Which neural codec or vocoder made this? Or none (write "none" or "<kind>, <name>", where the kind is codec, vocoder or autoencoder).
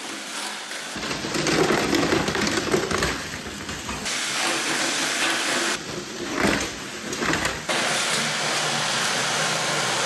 none